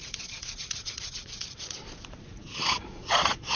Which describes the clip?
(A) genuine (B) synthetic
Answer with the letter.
B